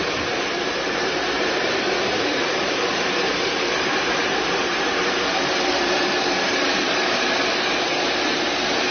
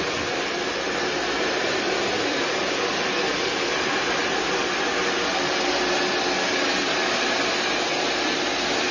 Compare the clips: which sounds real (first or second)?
second